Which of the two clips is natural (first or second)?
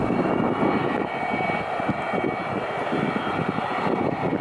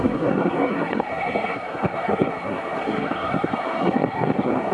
first